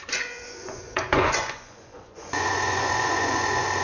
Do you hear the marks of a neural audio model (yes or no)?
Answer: yes